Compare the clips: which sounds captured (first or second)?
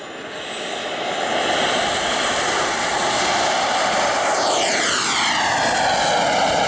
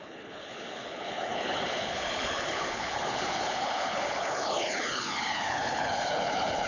first